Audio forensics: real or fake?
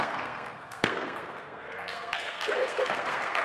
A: fake